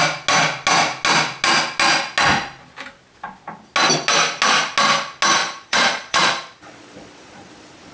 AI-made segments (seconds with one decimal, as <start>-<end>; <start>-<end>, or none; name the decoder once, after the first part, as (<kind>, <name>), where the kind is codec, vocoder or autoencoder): 5.4-7.9 (vocoder, Vocos)

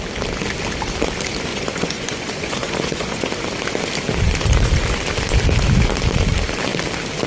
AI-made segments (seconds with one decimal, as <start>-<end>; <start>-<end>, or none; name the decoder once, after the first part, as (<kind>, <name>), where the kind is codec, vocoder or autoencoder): 1.5-3.3 (vocoder, Vocos)

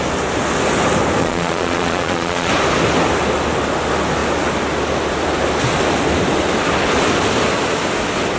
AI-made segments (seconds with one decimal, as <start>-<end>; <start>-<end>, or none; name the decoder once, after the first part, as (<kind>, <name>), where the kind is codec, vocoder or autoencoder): 1.2-2.5 (vocoder, Vocos)

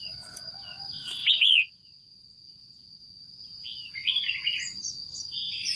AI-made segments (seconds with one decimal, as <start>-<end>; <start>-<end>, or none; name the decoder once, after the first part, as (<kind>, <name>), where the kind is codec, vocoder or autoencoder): 1.2-1.7 (vocoder, Vocos)

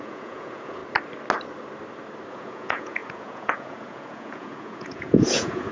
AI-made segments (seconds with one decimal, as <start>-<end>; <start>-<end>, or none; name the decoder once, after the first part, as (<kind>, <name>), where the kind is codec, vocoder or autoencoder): 0.0-0.8 (vocoder, Vocos); 2.3-5.7

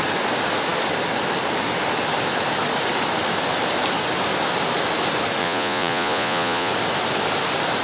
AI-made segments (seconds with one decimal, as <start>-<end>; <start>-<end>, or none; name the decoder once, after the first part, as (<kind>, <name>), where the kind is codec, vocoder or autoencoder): 5.4-6.7 (vocoder, Vocos)

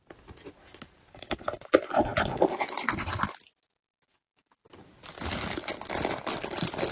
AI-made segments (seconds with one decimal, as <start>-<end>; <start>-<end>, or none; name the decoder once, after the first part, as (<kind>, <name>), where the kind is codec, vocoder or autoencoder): none